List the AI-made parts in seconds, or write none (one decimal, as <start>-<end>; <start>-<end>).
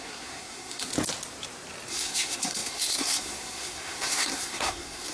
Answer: 0.0-0.9; 1.9-5.1